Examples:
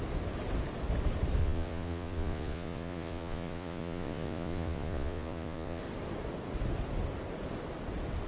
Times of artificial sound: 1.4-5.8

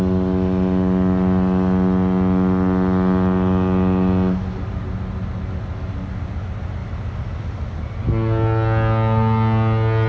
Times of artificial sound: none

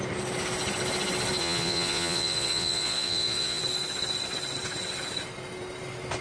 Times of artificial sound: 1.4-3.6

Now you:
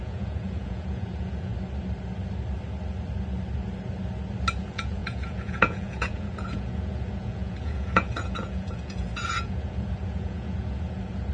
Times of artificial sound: 0.0-1.5; 4.6-11.3